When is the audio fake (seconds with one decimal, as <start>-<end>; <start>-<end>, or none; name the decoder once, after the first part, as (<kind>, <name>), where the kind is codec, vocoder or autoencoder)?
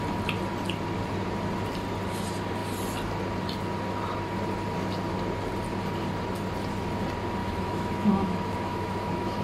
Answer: 7.4-9.4 (autoencoder, DAC-VAE)